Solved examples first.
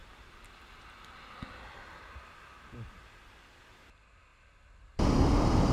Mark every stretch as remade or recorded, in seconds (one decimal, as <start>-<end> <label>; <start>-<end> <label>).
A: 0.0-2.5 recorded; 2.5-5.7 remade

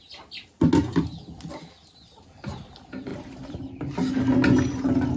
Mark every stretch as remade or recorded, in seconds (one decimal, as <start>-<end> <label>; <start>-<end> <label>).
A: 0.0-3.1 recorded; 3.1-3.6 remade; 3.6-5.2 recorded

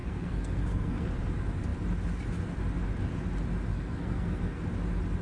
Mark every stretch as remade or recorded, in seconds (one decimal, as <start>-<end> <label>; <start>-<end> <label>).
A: 0.0-1.1 remade; 1.1-3.7 recorded; 3.7-4.6 remade; 4.6-5.2 recorded

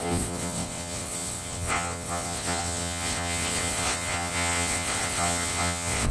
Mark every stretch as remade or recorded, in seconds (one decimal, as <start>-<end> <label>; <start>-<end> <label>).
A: 0.0-6.1 remade

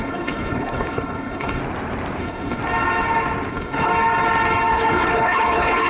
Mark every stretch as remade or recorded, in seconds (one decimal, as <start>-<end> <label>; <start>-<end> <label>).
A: 0.0-1.6 remade; 1.6-2.2 recorded; 2.2-2.6 remade; 2.6-3.5 recorded; 3.5-3.9 remade; 3.9-4.7 recorded; 4.7-5.9 remade

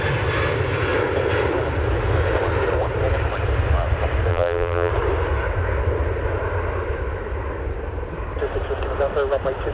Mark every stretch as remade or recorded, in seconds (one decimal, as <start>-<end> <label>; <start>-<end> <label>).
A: 0.0-4.3 recorded; 4.3-4.9 remade; 4.9-9.7 recorded

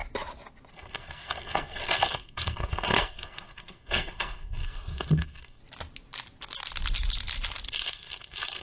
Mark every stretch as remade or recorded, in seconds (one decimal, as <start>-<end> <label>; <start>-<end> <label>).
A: 0.0-0.7 recorded; 0.7-5.6 remade; 5.6-7.7 recorded; 7.7-8.6 remade